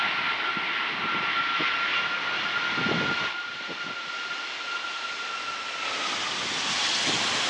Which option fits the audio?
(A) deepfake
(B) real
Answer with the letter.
B